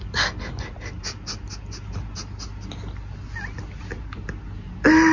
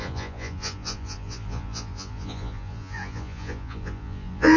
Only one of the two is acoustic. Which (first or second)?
first